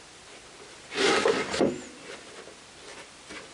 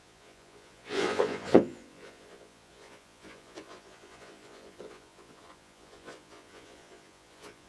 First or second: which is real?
first